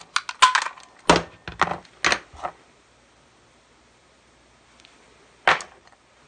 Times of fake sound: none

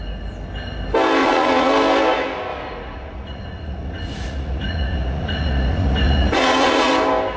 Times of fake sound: 1.2-1.7; 2.5-6.9

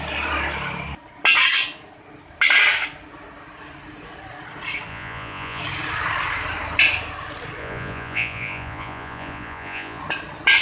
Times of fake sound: 4.9-5.6; 7.6-10.0

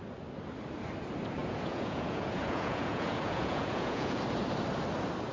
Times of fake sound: 1.4-4.2